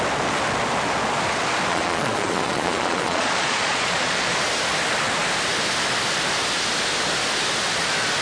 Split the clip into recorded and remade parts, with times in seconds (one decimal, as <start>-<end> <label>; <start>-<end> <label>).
0.0-1.7 recorded; 1.7-4.4 remade; 4.4-8.2 recorded